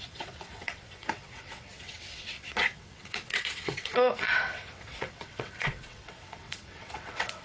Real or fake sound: fake